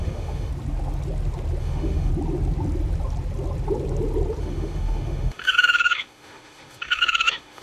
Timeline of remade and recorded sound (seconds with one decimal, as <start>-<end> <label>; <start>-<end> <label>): 0.0-0.5 remade; 0.5-1.6 recorded; 1.6-2.1 remade; 2.1-4.4 recorded; 4.4-7.6 remade